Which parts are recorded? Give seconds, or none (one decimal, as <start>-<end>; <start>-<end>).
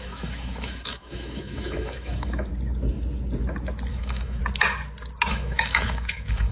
2.5-3.9; 4.4-5.3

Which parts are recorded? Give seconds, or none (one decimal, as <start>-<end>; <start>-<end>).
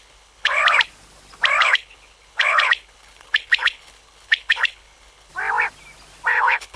0.6-1.6; 5.3-6.3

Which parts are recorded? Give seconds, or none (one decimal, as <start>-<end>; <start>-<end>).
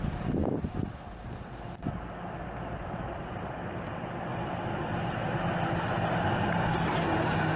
0.0-7.6